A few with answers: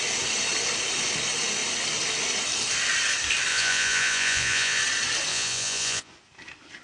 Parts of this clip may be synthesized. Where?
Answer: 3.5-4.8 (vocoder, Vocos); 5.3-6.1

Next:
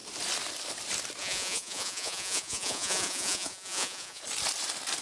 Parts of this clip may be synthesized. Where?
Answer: 1.2-4.2 (vocoder, Vocos)

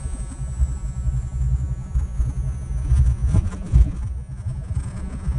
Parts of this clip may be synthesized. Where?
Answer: 0.0-5.4 (vocoder, Vocos)

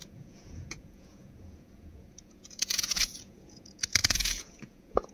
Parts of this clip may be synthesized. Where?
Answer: 0.0-5.1 (vocoder, Vocos)